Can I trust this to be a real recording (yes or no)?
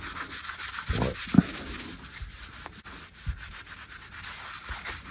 yes